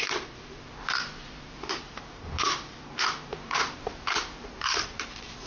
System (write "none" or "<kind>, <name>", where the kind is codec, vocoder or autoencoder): vocoder, BigVGAN v2